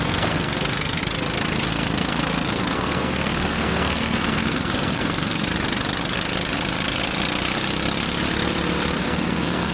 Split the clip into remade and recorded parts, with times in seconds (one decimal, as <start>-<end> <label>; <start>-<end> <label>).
0.0-1.0 remade; 1.0-1.7 recorded; 1.7-5.5 remade; 5.5-9.0 recorded; 9.0-9.7 remade